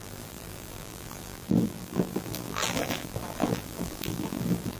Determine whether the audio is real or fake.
fake